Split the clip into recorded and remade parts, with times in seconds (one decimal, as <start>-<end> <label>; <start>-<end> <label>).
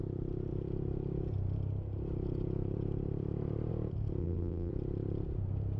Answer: 0.0-4.2 recorded; 4.2-4.7 remade; 4.7-5.8 recorded